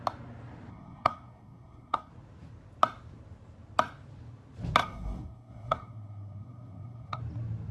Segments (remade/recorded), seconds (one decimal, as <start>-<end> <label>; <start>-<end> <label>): 0.0-0.7 recorded; 0.7-2.1 remade; 2.1-4.8 recorded; 4.8-7.2 remade; 7.2-7.7 recorded